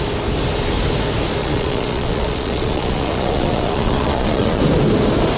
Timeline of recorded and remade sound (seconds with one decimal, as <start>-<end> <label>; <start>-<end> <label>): 0.0-1.4 recorded; 1.4-4.6 remade; 4.6-5.4 recorded